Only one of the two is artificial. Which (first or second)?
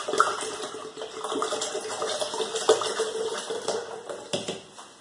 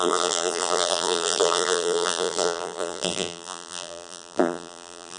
second